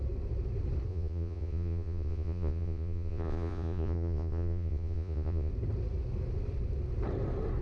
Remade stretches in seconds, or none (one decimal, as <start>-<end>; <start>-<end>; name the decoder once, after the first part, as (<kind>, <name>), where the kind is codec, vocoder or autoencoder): 0.9-5.5 (vocoder, Vocos)